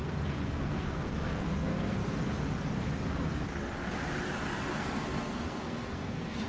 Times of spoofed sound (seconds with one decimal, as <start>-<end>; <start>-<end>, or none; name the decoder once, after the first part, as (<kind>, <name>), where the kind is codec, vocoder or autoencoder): 0.0-2.0 (codec, SNAC); 4.7-6.5